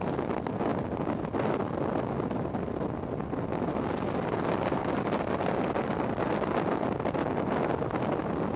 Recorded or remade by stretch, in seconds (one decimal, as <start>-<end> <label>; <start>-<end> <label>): 0.0-8.6 recorded